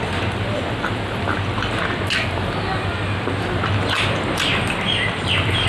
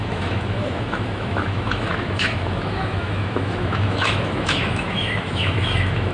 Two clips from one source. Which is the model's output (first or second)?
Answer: second